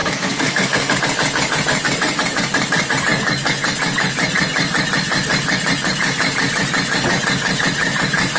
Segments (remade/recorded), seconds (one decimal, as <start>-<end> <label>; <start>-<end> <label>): 0.0-1.0 remade; 1.0-8.4 recorded